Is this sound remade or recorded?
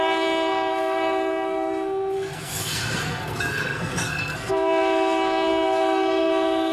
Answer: remade